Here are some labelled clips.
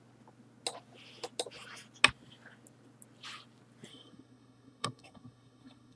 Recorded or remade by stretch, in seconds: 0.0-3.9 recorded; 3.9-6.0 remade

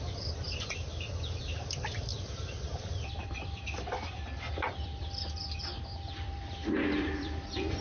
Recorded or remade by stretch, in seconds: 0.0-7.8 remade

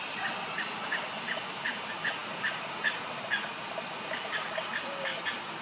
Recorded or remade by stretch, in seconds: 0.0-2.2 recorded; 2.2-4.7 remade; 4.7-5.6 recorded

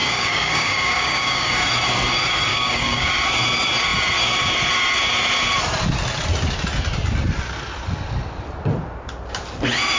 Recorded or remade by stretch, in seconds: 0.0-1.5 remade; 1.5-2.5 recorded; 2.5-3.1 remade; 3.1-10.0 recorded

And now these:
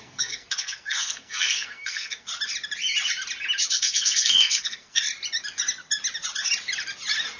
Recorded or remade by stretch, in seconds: 0.0-2.3 remade; 2.3-3.7 recorded; 3.7-5.0 remade; 5.0-7.4 recorded

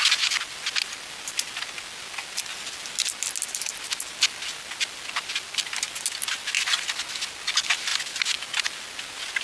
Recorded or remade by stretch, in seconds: 0.0-9.4 recorded

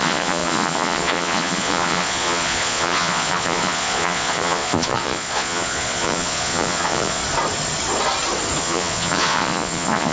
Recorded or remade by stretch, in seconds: 0.0-7.2 remade; 7.2-8.6 recorded; 8.6-10.1 remade

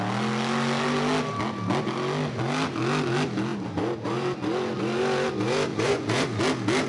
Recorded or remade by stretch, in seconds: 0.0-5.7 recorded; 5.7-6.4 remade; 6.4-6.9 recorded